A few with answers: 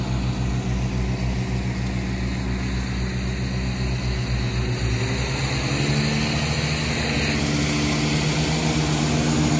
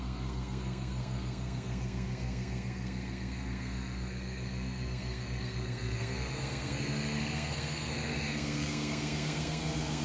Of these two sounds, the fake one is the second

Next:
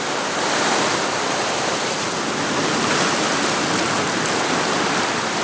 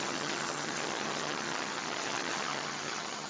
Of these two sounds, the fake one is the second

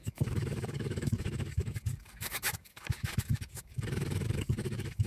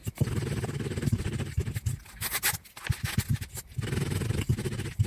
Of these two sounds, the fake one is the first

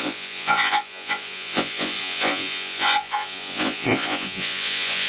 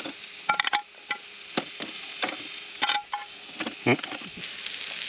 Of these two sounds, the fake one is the first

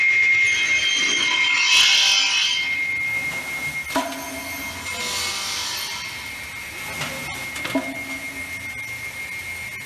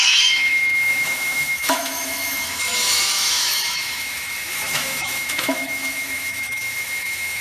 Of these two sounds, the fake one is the second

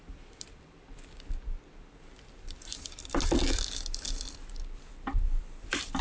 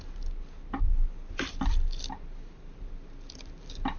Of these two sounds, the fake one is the first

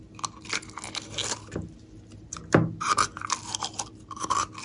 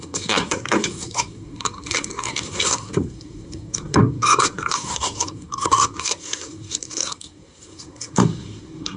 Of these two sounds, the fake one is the second